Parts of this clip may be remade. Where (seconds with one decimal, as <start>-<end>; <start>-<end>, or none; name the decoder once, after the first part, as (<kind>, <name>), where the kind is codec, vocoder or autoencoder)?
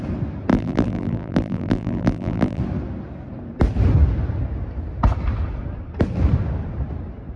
0.5-2.6 (vocoder, BigVGAN v2)